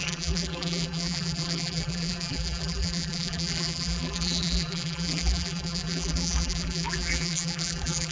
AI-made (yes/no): yes